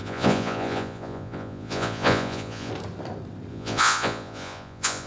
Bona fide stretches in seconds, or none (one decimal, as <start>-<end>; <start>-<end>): 2.7-3.5